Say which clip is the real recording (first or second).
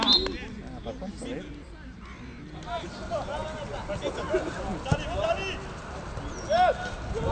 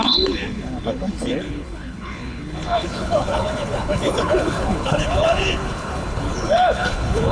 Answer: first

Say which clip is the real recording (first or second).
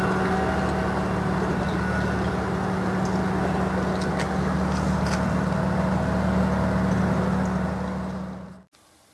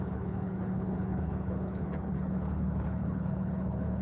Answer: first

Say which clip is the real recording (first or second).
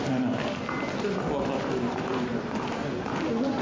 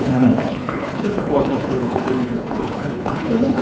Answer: first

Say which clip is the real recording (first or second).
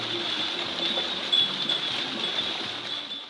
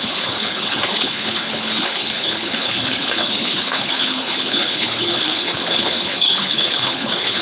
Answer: first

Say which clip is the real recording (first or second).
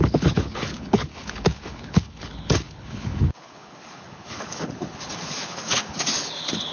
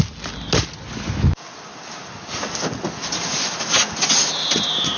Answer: second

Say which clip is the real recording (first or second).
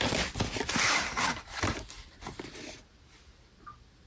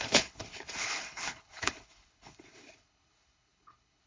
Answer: first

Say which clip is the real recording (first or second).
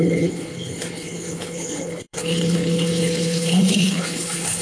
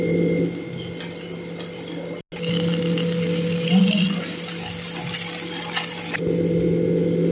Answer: second